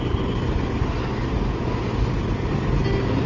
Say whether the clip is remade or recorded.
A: recorded